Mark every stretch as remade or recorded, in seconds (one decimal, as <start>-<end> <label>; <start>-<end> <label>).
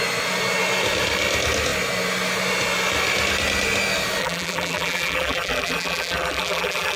0.0-4.2 recorded; 4.2-7.0 remade